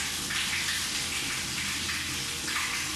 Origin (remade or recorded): recorded